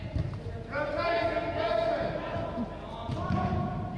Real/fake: real